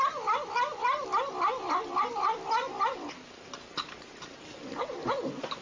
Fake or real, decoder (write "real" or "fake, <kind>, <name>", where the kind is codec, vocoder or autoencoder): real